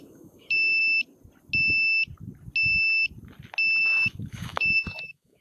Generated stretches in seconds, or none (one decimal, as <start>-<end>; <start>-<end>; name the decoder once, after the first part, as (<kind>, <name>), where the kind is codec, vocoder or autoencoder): 0.0-0.8 (autoencoder, DAC-VAE); 3.8-5.4